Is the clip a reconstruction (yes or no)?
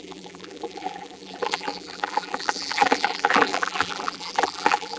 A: yes